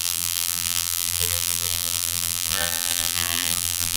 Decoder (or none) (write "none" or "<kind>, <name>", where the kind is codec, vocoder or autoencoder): vocoder, BigVGAN v2